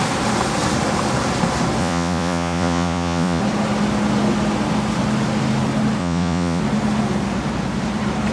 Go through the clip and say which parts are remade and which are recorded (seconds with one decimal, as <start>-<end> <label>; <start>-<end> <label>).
0.0-1.8 recorded; 1.8-3.4 remade; 3.4-6.0 recorded; 6.0-6.6 remade; 6.6-8.3 recorded